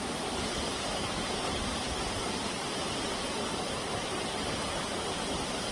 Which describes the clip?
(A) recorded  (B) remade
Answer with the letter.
A